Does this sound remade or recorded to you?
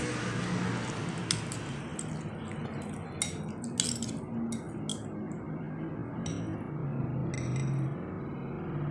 recorded